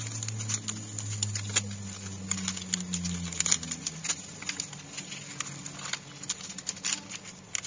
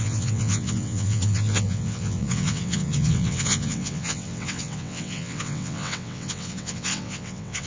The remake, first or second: second